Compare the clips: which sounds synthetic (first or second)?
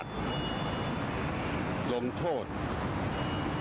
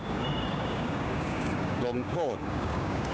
second